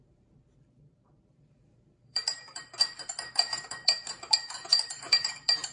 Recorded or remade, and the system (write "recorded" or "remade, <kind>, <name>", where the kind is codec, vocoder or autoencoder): remade, vocoder, BigVGAN v2